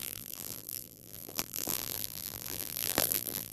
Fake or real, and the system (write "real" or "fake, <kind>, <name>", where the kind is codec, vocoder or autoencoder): fake, vocoder, BigVGAN v2